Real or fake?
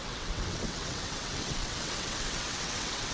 fake